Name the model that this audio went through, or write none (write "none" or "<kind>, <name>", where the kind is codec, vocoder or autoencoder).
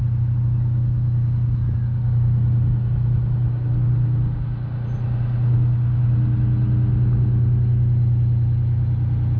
none